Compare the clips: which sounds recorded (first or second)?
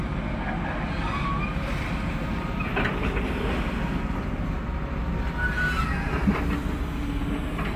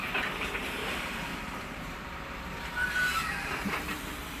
first